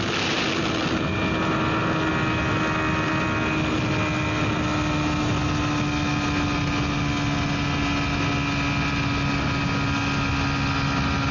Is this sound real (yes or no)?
yes